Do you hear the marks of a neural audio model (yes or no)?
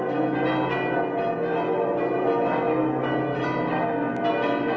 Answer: no